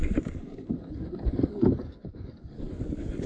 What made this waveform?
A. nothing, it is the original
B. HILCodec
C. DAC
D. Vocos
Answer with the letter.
C